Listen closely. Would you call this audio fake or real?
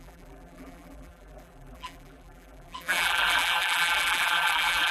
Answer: fake